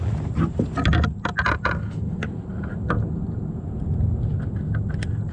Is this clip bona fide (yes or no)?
yes